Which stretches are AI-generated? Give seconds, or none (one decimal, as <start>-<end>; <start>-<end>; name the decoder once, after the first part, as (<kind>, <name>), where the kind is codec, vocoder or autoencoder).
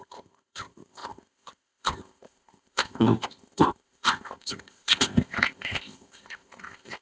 0.0-7.0 (codec, ZipCodec)